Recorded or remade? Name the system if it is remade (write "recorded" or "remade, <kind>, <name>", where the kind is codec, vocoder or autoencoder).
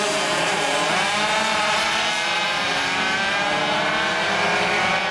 remade, vocoder, BigVGAN v2